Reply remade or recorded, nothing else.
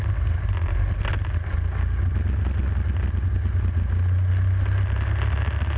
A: recorded